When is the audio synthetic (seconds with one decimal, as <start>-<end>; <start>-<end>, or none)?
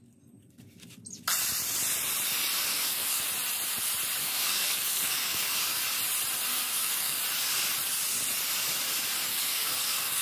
2.7-3.3; 4.2-5.8; 6.5-7.2; 9.3-10.2